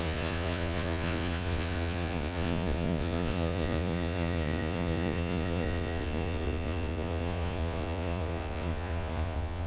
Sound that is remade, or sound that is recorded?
remade